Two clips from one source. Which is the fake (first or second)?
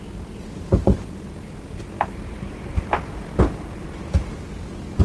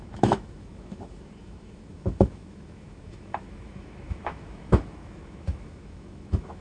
second